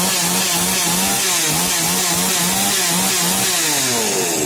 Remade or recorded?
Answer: recorded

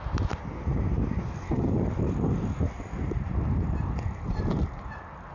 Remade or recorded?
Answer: recorded